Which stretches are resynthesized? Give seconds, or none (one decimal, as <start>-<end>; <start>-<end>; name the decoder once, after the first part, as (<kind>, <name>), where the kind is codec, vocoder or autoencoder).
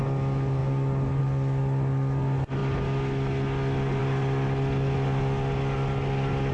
none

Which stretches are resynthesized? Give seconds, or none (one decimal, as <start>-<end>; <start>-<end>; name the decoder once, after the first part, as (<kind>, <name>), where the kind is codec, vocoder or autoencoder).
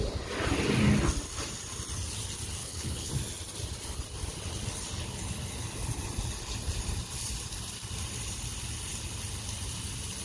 2.6-3.1 (codec, HILCodec)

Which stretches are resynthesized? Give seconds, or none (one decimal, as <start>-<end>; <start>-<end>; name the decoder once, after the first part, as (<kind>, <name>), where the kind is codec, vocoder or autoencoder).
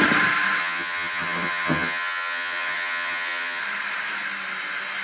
0.6-3.6 (vocoder, HiFi-GAN)